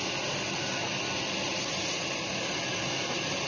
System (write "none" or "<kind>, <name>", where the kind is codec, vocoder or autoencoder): none